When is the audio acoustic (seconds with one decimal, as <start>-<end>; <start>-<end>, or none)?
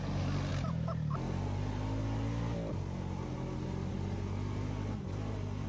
0.0-5.7